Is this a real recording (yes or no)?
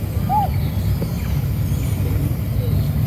yes